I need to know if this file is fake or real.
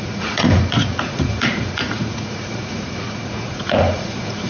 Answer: fake